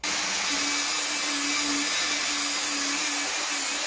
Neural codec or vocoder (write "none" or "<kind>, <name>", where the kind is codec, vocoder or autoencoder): none